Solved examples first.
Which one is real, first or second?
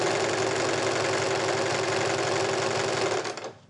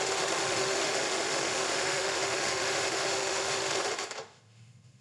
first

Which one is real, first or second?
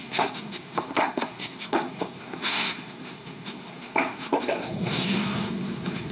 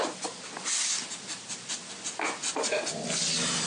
second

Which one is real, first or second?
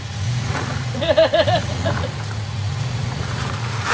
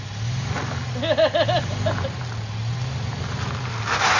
second